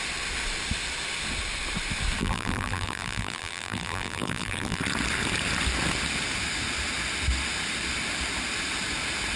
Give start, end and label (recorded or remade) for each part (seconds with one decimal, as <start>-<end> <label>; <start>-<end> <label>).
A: 0.0-2.2 recorded; 2.2-4.8 remade; 4.8-9.4 recorded